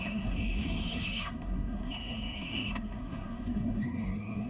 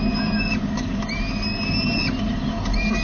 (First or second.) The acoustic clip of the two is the second